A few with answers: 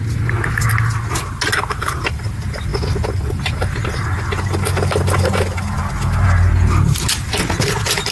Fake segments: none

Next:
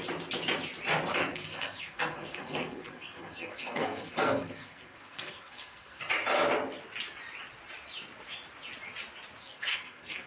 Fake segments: 1.2-6.0 (codec, SNAC); 9.4-10.3

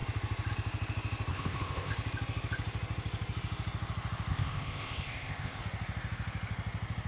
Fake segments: 1.3-1.9 (codec, ZipCodec); 4.3-5.6

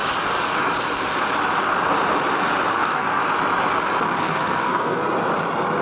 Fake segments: 2.7-3.2 (codec, SNAC); 4.2-5.0